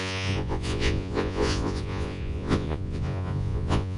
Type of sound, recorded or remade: remade